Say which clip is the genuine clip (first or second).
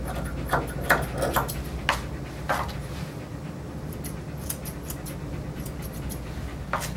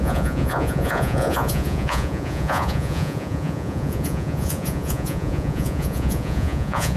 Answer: first